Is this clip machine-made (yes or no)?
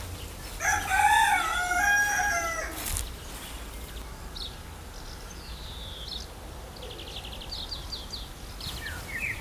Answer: no